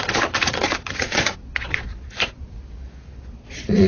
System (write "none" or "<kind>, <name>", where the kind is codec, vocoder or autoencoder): vocoder, Vocos